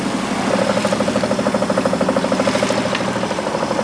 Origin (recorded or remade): recorded